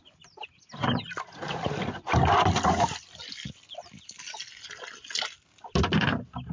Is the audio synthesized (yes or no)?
no